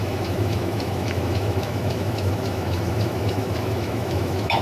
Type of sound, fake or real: fake